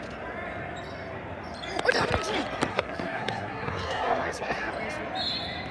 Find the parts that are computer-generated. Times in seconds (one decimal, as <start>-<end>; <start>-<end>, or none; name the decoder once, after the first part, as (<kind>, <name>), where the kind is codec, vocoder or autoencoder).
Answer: 2.7-4.7 (codec, SNAC)